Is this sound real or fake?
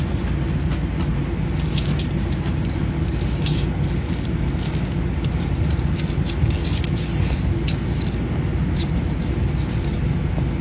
real